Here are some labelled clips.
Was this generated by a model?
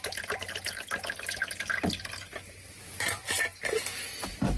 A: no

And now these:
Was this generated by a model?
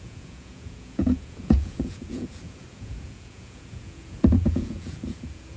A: yes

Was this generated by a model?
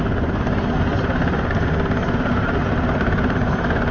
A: no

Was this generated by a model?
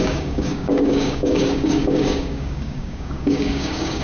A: yes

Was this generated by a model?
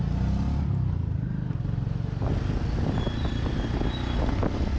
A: no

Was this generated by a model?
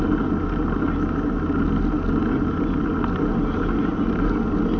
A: no